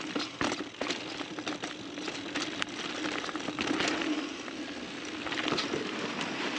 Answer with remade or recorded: recorded